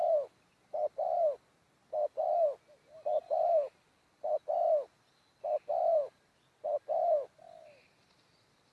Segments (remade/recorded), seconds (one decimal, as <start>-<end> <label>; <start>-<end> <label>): 0.0-3.2 recorded; 3.2-4.1 remade; 4.1-5.9 recorded; 5.9-7.6 remade; 7.6-8.7 recorded